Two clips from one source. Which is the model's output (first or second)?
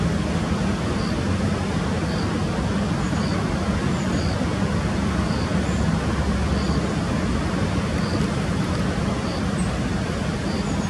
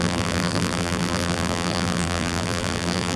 second